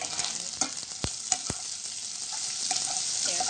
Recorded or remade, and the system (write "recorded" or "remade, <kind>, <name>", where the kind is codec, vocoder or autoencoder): recorded